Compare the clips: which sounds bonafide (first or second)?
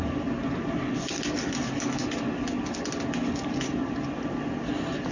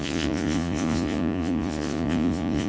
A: first